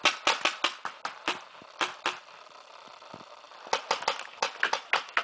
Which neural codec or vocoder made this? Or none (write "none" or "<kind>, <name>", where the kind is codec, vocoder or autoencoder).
none